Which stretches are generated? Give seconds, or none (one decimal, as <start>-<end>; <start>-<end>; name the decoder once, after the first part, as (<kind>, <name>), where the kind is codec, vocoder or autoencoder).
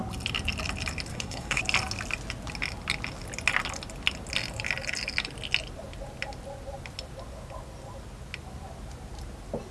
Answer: 1.1-1.6 (codec, SNAC)